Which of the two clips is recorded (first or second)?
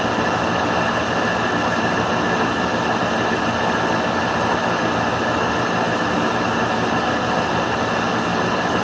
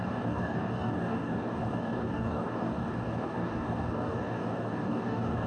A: first